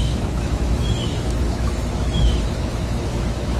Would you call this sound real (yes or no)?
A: no